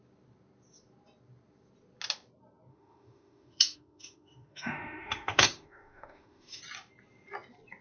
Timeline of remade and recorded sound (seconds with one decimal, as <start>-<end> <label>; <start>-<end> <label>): 0.0-2.7 recorded; 2.7-6.6 remade; 6.6-7.8 recorded